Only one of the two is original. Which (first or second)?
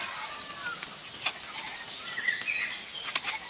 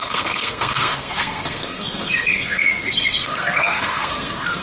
first